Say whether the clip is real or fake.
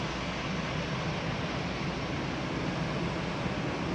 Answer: real